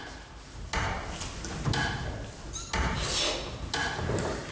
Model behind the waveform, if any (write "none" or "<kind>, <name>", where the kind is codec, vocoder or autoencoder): none